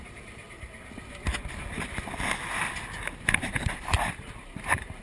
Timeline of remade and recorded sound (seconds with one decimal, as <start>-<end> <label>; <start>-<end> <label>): 0.0-0.4 remade; 0.4-3.4 recorded; 3.4-5.0 remade

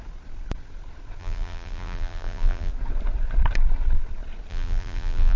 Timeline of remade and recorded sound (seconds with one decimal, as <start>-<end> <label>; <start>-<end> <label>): 0.0-1.2 recorded; 1.2-2.7 remade; 2.7-4.5 recorded; 4.5-5.4 remade

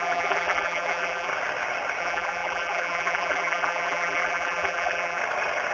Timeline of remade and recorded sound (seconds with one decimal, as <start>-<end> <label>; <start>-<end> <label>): 0.0-1.3 remade; 1.3-2.0 recorded; 2.0-5.2 remade; 5.2-5.7 recorded

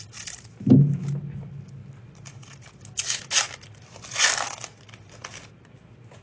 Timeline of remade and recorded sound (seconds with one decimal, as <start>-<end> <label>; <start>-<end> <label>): 0.0-6.2 recorded